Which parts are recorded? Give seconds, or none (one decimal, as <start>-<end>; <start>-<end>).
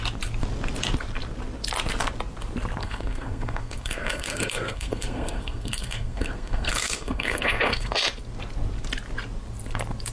0.0-2.8; 7.9-10.1